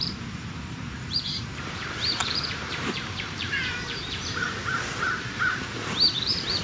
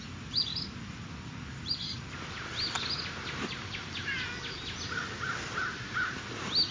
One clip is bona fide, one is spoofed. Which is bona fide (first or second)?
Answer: second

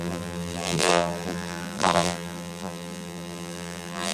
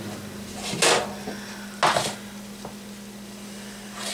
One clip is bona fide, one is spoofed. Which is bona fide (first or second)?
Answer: second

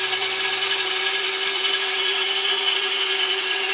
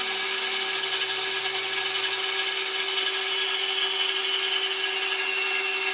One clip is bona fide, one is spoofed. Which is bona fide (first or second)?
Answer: second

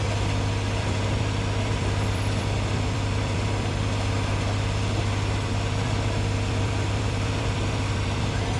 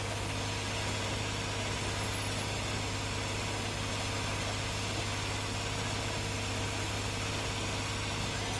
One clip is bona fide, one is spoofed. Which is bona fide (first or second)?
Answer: second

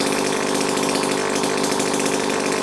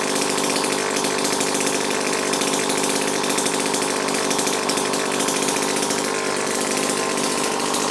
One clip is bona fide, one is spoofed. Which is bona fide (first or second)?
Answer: first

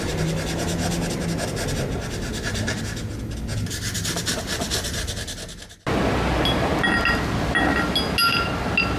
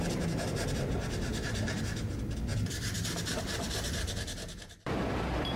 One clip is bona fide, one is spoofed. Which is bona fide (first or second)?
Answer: first